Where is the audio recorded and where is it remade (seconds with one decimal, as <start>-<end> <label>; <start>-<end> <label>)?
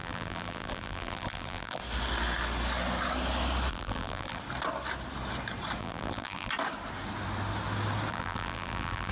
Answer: 0.0-1.8 remade; 1.8-3.7 recorded; 3.7-4.4 remade; 4.4-5.8 recorded; 5.8-6.5 remade; 6.5-8.1 recorded; 8.1-9.1 remade